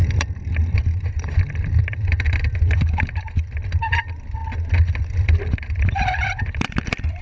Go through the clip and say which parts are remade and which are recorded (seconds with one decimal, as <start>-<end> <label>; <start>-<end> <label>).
0.0-7.2 remade